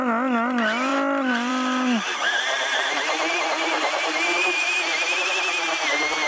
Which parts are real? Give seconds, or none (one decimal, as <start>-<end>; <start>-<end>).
0.0-2.2; 5.3-6.3